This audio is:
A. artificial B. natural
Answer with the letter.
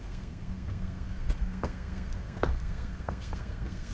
A